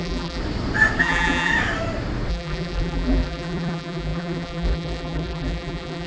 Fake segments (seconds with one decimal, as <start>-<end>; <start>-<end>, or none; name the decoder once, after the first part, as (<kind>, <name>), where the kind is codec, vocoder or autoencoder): 0.0-0.4 (vocoder, BigVGAN v2); 1.0-1.5; 2.3-6.1